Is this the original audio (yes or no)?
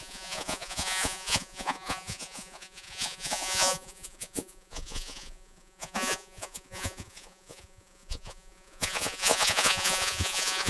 no